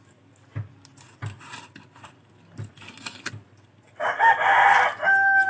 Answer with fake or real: real